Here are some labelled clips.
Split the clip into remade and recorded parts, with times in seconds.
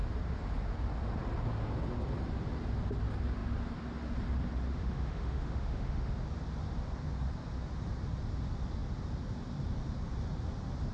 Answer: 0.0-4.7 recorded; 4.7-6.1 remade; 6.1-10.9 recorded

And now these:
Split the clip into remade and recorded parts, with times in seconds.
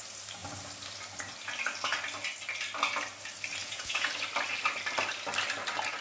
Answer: 0.0-3.6 recorded; 3.6-4.1 remade; 4.1-6.0 recorded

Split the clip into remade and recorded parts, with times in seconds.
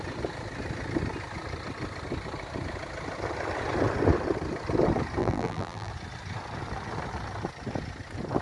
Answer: 0.0-5.2 recorded; 5.2-5.9 remade; 5.9-8.4 recorded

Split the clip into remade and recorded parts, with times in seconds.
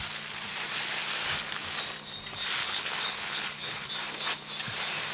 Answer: 0.0-2.6 recorded; 2.6-3.9 remade; 3.9-5.1 recorded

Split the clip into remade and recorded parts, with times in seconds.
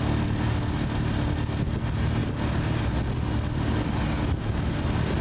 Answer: 0.0-5.2 recorded